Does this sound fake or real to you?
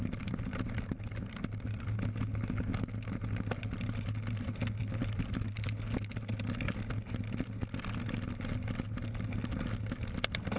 real